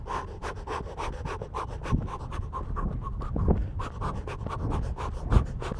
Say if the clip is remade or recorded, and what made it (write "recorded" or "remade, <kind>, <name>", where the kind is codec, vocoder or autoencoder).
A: recorded